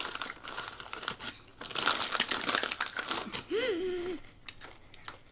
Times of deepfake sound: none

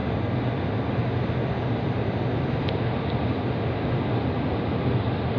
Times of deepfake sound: none

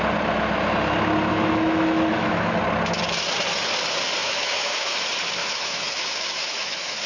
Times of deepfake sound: 1.3-2.6 (autoencoder, DAC-VAE); 4.2-5.0; 5.4-7.1

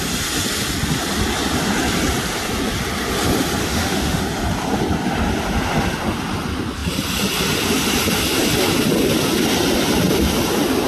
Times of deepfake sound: 3.6-4.2 (autoencoder, DAC-VAE)

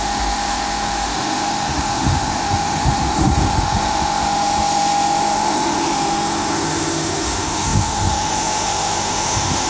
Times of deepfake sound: 0.0-9.7 (autoencoder, DAC-VAE)

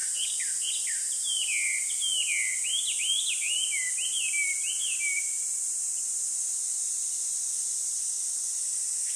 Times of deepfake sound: none

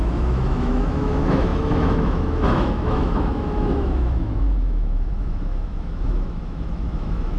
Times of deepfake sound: 0.0-7.4 (autoencoder, DAC-VAE)

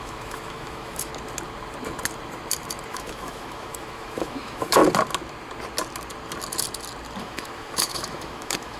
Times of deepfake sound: 0.0-1.1 (autoencoder, DAC-VAE); 2.9-4.8; 7.2-8.8